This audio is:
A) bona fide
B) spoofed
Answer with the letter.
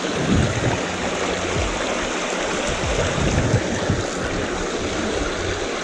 A